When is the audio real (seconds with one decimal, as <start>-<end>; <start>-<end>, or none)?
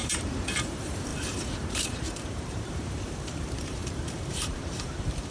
none